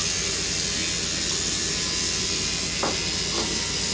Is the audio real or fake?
real